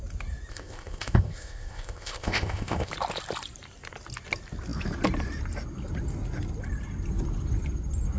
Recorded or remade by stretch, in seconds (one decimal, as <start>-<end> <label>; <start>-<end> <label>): 0.0-0.5 recorded; 0.5-2.9 remade; 2.9-8.2 recorded